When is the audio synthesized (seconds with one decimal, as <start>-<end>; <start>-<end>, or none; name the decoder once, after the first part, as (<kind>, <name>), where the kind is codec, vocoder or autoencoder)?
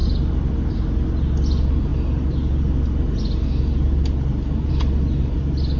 none